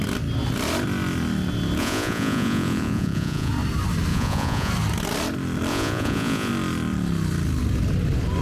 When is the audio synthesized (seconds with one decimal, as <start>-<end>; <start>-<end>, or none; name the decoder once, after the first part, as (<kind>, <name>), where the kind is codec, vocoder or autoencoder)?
1.8-3.5 (vocoder, Vocos); 4.1-4.7; 5.7-6.5